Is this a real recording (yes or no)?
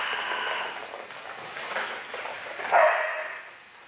yes